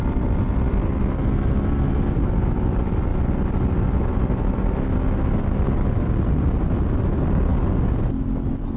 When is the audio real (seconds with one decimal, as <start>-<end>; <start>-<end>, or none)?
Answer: 0.0-8.8